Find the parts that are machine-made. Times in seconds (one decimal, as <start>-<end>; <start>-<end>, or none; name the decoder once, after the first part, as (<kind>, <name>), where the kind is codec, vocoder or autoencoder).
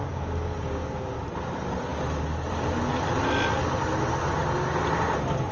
0.0-1.2 (codec, DAC)